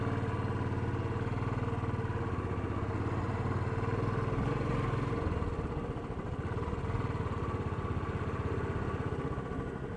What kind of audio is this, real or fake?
real